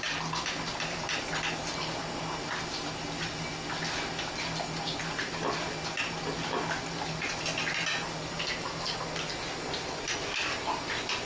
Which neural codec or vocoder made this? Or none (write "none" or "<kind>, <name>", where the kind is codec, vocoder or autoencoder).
none